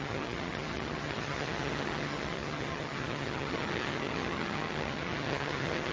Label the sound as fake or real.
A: fake